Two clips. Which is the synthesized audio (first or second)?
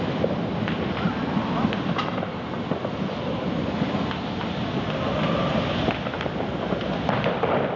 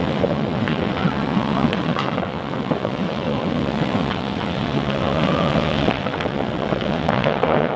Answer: second